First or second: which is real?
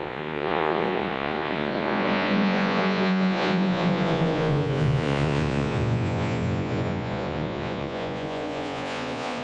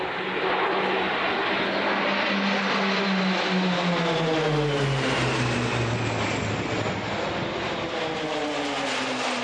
second